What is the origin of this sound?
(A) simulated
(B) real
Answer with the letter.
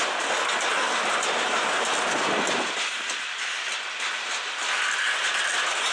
B